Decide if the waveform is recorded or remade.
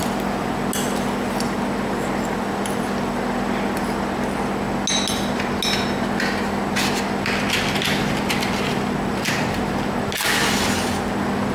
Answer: recorded